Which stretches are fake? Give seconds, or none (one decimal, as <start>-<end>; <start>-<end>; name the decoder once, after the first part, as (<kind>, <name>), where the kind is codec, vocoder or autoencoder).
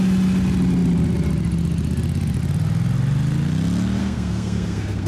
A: 4.0-5.1 (codec, SNAC)